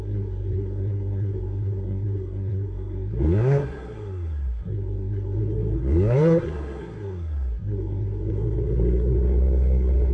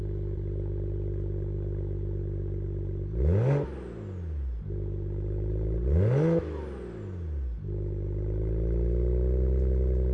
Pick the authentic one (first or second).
second